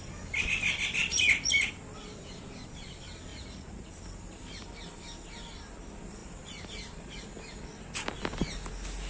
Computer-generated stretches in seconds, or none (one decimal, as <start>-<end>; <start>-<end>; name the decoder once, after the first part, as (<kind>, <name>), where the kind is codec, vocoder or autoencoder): 1.1-1.7 (vocoder, Vocos); 3.3-3.9